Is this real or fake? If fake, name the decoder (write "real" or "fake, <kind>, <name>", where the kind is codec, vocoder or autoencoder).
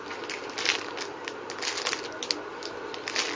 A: real